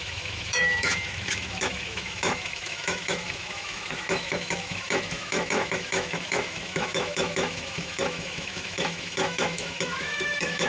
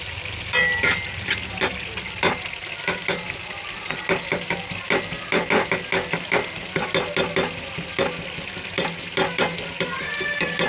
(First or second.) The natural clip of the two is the second